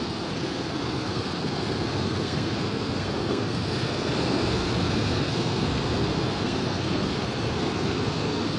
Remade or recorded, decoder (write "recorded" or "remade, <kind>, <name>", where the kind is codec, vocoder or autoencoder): remade, codec, SNAC